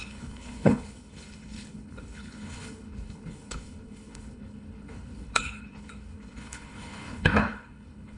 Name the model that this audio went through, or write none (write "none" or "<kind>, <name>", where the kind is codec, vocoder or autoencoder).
codec, HILCodec